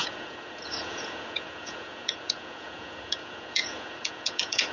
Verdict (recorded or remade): remade